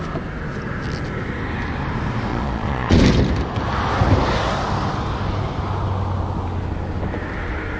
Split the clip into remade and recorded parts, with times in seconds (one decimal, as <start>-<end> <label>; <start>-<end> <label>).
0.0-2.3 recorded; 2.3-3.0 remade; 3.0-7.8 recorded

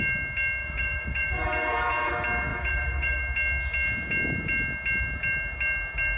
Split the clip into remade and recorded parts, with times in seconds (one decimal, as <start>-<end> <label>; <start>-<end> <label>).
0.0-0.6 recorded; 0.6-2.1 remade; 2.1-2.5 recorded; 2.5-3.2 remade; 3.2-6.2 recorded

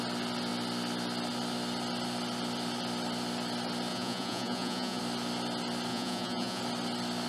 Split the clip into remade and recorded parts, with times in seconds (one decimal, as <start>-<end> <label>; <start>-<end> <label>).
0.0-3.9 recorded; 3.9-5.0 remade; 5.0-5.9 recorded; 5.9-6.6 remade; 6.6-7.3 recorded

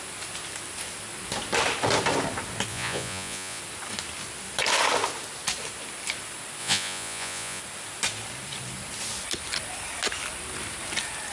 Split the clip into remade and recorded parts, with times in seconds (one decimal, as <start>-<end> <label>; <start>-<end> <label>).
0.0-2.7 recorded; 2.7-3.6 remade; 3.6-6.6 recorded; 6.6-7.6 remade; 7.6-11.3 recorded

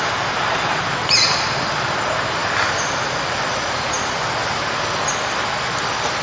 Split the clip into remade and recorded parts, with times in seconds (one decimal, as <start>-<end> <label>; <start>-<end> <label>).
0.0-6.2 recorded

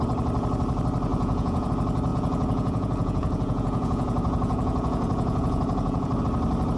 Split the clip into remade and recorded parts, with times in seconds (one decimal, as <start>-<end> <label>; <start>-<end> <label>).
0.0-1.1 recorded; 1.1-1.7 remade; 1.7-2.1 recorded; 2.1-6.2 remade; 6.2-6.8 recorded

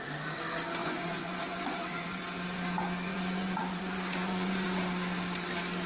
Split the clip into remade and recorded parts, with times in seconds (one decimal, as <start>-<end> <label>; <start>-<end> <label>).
0.0-0.8 recorded; 0.8-2.2 remade; 2.2-3.1 recorded; 3.1-4.8 remade; 4.8-5.9 recorded